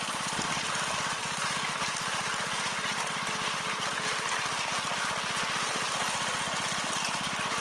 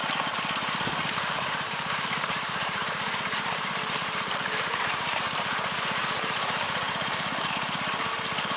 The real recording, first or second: first